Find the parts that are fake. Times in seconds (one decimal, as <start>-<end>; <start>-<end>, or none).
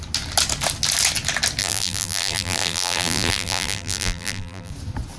1.6-4.7